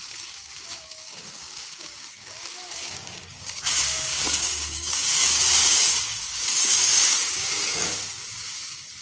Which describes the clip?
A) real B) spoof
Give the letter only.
B